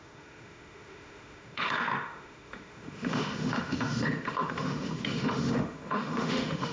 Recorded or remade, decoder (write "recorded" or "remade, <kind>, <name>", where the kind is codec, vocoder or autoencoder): remade, autoencoder, DAC-VAE